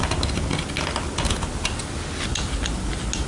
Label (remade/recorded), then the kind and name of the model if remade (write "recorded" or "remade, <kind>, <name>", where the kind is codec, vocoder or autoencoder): recorded